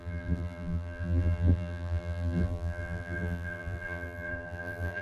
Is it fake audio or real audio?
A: fake